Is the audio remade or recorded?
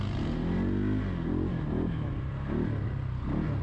recorded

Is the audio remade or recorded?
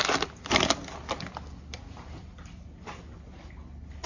recorded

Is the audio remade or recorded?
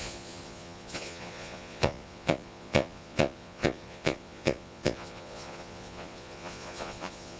remade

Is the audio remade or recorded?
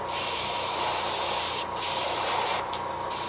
remade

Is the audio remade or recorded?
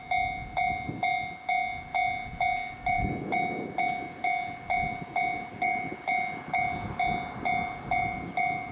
recorded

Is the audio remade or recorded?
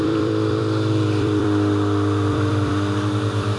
remade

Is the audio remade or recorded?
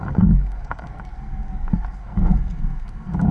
remade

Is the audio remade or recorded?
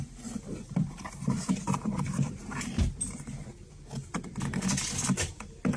recorded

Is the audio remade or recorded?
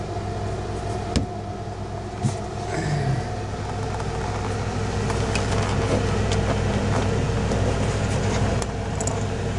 recorded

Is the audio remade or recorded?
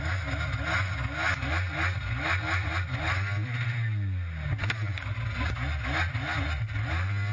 recorded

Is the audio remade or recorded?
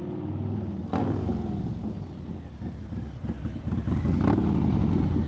recorded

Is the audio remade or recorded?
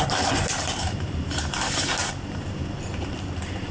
remade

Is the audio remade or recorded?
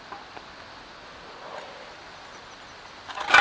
recorded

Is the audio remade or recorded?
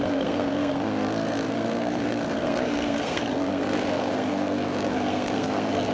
remade